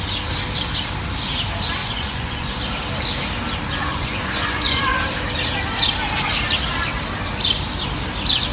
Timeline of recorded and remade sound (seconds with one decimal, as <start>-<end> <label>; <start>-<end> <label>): 0.0-1.8 recorded; 1.8-2.6 remade; 2.6-3.9 recorded; 3.9-4.8 remade; 4.8-8.5 recorded